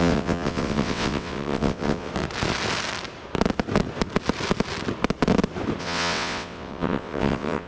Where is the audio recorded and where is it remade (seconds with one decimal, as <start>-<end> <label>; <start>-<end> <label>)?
0.0-2.1 remade; 2.1-5.8 recorded; 5.8-7.7 remade